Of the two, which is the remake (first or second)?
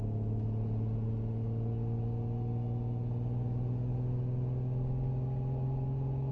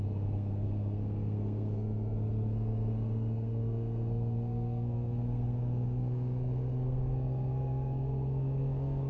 second